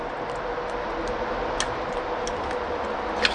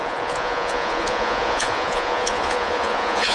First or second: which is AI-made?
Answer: second